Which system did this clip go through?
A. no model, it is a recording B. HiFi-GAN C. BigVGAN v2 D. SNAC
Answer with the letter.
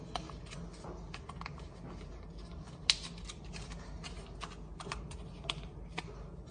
A